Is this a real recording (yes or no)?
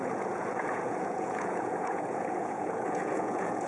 no